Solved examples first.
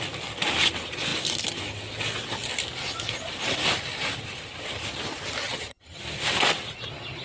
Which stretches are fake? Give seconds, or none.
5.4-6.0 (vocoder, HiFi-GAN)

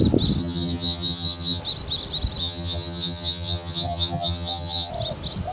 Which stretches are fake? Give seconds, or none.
0.4-1.6 (vocoder, HiFi-GAN); 2.4-4.9